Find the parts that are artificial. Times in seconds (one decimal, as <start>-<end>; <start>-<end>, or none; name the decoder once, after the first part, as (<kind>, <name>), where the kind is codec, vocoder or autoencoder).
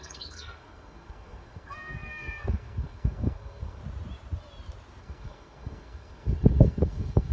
0.0-3.8 (codec, SNAC); 5.0-7.3